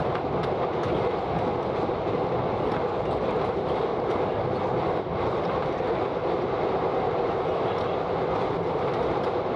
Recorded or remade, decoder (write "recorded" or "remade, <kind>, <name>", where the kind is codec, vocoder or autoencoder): recorded